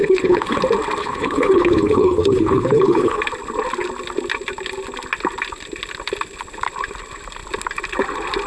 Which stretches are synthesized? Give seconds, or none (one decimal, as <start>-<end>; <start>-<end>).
0.0-0.6; 1.0-3.2